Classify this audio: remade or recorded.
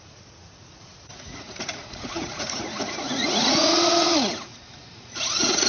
remade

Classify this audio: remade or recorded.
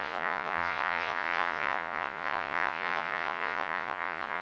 remade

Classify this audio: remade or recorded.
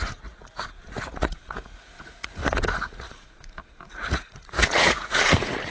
remade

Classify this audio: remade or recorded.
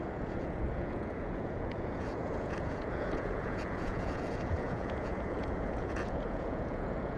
remade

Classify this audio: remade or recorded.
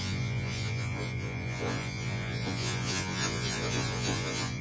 remade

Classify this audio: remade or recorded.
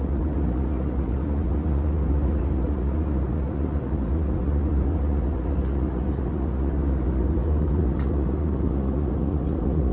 remade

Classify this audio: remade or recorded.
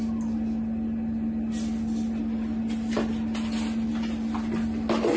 recorded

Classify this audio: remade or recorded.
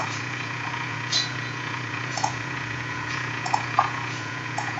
remade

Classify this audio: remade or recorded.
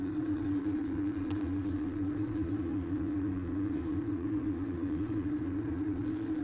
remade